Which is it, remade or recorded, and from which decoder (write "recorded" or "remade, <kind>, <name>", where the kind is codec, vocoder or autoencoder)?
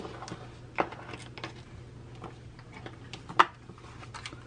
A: recorded